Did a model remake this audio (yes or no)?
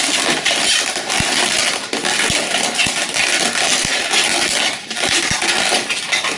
no